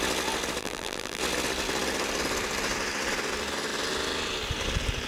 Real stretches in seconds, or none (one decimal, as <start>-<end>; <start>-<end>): 0.0-0.6; 1.2-5.1